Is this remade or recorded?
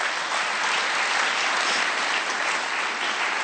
recorded